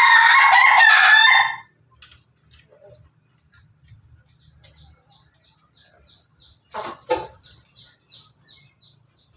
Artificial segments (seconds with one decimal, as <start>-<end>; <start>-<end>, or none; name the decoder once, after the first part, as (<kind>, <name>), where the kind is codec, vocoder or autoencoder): 0.6-1.6 (vocoder, BigVGAN v2)